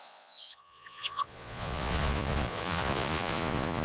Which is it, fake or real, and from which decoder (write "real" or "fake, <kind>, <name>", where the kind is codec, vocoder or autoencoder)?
fake, vocoder, Vocos